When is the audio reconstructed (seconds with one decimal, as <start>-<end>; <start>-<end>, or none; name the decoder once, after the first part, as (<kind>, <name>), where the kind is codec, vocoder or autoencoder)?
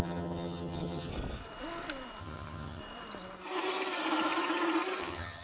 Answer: 0.0-1.1 (vocoder, HiFi-GAN); 2.2-2.8; 5.0-5.4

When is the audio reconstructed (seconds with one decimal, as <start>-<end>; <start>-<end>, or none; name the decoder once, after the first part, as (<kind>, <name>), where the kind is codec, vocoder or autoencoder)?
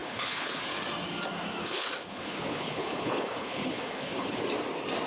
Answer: 0.0-0.6 (codec, HILCodec); 1.6-4.4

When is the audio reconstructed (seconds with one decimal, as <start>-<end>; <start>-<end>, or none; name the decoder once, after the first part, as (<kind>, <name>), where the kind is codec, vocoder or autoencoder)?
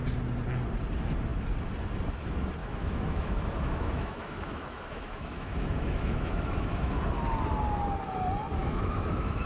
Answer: 2.6-6.9 (autoencoder, DAC-VAE); 8.6-9.5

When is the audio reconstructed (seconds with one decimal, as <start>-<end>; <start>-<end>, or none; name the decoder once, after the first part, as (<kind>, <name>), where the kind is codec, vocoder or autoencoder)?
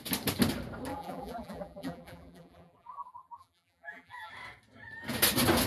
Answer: 0.9-4.3 (vocoder, BigVGAN v2)